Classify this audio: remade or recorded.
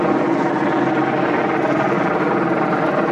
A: recorded